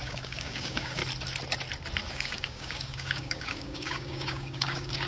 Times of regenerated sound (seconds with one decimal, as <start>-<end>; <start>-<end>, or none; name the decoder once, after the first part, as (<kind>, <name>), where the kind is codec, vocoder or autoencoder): 0.0-1.0 (codec, DAC); 2.1-5.1